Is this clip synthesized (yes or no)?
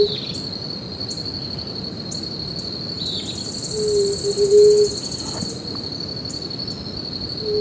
no